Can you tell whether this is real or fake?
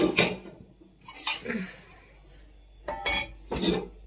real